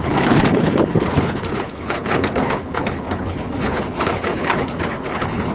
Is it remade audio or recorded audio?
remade